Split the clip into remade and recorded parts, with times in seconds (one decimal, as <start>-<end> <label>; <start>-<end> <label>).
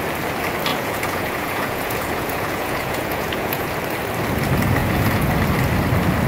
0.0-0.7 recorded; 0.7-3.7 remade; 3.7-4.8 recorded; 4.8-5.3 remade; 5.3-6.3 recorded